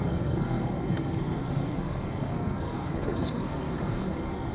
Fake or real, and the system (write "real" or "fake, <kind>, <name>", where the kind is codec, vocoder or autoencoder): fake, codec, SNAC